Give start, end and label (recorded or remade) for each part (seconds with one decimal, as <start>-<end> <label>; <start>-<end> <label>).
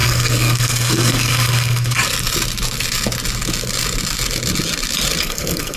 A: 0.0-2.0 remade; 2.0-5.2 recorded; 5.2-5.8 remade